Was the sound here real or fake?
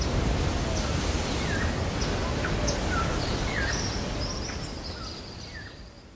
real